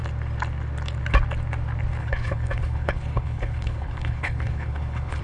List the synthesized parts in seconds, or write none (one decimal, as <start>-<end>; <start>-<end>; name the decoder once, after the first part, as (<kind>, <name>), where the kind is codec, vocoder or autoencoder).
2.0-5.2 (codec, HILCodec)